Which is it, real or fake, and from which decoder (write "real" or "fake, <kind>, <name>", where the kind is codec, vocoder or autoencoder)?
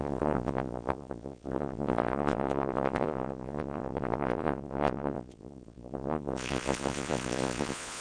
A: fake, vocoder, Vocos